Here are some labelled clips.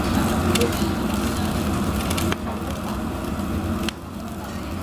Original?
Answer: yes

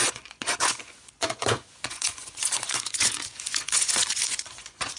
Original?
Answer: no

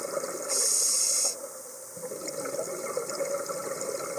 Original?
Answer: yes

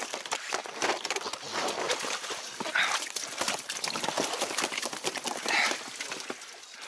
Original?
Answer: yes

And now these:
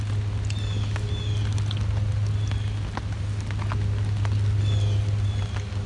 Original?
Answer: yes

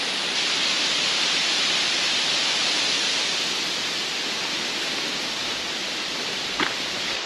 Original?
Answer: yes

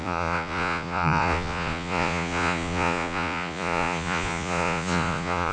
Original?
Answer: no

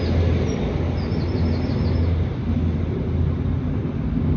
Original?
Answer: yes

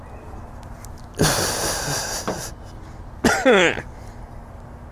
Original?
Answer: yes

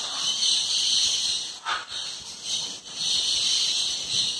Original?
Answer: yes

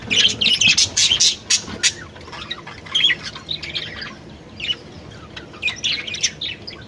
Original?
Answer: yes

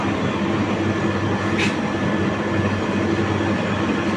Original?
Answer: yes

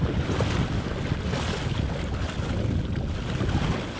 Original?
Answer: yes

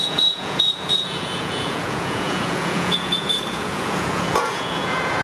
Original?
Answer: no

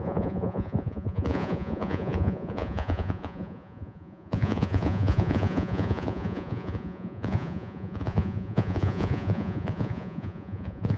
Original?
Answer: no